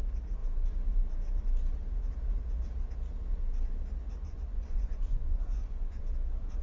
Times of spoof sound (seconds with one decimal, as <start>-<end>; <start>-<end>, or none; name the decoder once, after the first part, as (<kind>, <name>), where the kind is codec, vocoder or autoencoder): 4.2-6.0 (vocoder, Vocos)